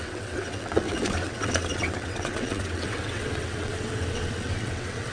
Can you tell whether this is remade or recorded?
remade